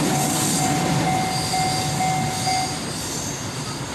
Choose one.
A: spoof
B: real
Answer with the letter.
B